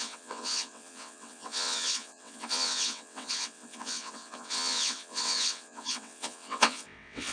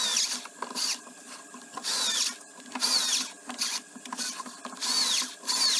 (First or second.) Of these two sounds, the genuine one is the second